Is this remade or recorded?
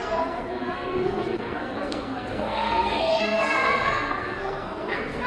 remade